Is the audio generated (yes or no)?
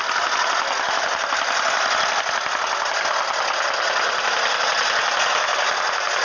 no